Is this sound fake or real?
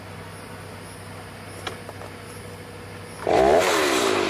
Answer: real